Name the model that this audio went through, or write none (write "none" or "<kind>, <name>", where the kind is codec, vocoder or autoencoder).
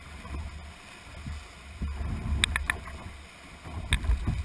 none